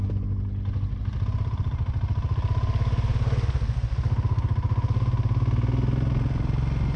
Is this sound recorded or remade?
recorded